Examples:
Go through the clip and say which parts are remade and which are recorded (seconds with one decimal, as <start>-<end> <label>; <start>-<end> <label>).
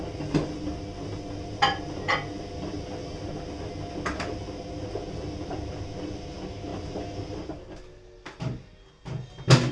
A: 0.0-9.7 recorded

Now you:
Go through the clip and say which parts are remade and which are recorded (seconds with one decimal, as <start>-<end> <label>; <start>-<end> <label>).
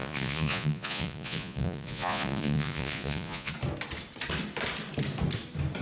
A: 0.0-3.5 remade; 3.5-5.8 recorded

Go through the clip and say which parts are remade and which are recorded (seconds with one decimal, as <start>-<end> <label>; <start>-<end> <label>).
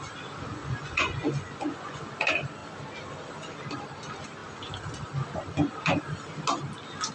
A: 0.0-0.5 recorded; 0.5-2.0 remade; 2.0-7.1 recorded